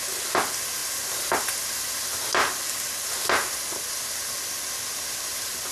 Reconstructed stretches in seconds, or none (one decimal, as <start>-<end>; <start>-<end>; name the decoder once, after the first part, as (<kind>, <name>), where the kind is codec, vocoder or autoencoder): none